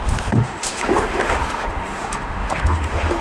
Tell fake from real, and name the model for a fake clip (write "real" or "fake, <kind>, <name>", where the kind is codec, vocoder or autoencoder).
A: fake, autoencoder, DAC-VAE